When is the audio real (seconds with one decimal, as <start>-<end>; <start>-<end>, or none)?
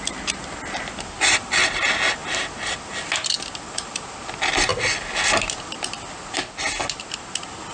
0.0-7.7